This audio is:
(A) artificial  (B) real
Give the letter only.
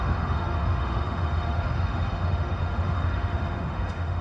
A